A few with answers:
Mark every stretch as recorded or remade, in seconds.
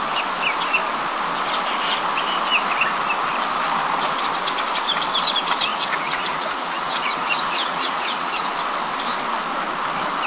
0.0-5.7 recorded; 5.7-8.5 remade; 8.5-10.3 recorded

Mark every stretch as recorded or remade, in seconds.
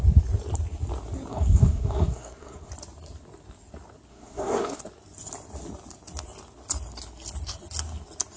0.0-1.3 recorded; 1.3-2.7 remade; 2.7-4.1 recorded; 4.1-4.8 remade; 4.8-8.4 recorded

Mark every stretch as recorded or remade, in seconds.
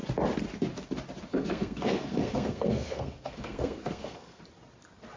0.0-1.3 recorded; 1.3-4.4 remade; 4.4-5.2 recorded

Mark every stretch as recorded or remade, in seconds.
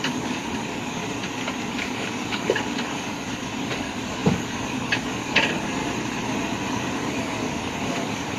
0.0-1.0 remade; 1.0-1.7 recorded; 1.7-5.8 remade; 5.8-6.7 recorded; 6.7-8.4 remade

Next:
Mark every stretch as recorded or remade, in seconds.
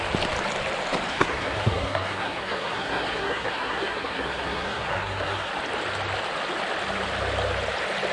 0.0-1.1 recorded; 1.1-5.5 remade; 5.5-8.1 recorded